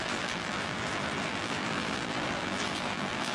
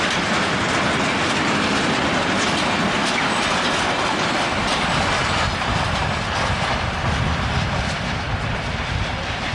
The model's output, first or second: first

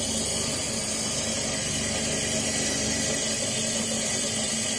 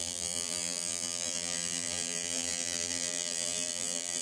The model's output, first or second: second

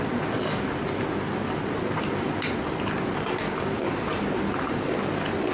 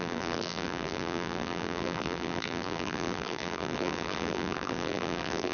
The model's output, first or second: second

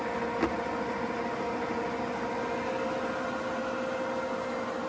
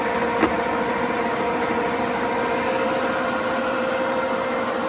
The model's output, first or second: second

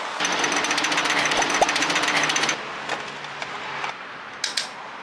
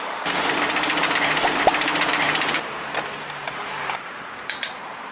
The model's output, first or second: second